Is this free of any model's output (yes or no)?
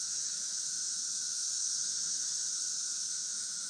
no